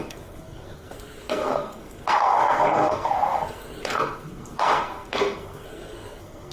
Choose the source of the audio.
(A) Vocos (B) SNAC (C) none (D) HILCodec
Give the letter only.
B